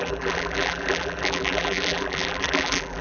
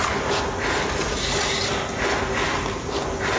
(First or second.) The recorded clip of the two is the second